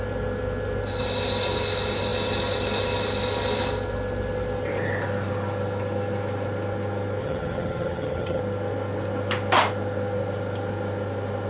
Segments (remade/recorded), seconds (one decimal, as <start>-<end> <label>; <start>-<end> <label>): 0.0-7.2 recorded; 7.2-8.4 remade; 8.4-11.5 recorded